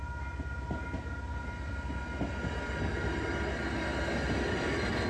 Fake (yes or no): no